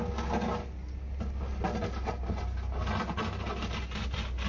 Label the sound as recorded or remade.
recorded